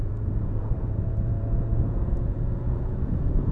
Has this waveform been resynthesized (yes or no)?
yes